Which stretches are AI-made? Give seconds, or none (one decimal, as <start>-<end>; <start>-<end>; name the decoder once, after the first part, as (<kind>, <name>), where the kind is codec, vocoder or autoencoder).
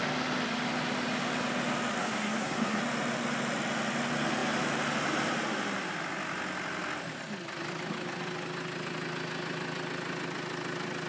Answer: 2.0-2.8 (codec, SNAC)